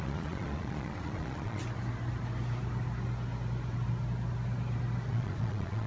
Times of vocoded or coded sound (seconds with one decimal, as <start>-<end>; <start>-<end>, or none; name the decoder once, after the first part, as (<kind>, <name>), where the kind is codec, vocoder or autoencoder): 0.0-1.6 (vocoder, Vocos); 5.1-5.9

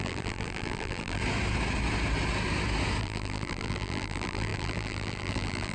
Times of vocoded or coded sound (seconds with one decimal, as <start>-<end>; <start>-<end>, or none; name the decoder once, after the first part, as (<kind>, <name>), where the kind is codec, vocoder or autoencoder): 0.0-1.2 (vocoder, BigVGAN v2); 3.0-5.7

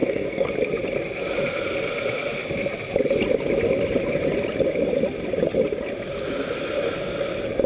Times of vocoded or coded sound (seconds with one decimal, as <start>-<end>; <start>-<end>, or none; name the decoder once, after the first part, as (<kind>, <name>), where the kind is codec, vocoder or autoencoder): 0.0-0.5 (codec, SNAC)